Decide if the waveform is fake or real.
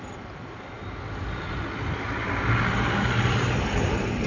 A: real